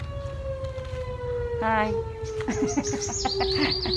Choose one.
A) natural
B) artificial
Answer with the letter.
A